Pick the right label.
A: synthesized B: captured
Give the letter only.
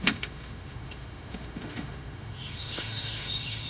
A